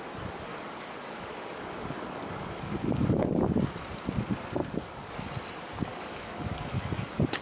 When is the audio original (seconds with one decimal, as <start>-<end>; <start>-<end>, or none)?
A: 0.0-0.5; 3.3-4.6; 5.1-5.9